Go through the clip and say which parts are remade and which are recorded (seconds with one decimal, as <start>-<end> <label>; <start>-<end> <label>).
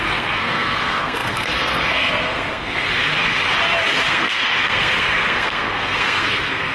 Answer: 0.0-2.9 remade; 2.9-4.1 recorded; 4.1-6.7 remade